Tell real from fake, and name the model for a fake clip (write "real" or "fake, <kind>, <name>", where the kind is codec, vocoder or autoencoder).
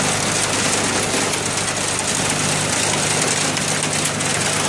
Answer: real